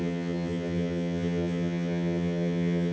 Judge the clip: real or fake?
fake